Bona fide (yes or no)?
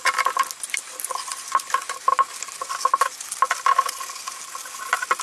yes